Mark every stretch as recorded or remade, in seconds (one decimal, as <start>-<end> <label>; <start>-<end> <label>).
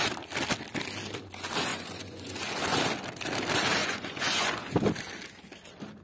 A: 0.0-1.7 recorded; 1.7-2.6 remade; 2.6-3.8 recorded; 3.8-4.7 remade; 4.7-6.0 recorded